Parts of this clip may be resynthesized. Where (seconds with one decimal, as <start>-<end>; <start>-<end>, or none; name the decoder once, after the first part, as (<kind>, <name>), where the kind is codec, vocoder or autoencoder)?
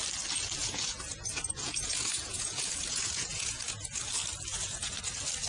0.6-3.9 (vocoder, Vocos); 4.5-5.0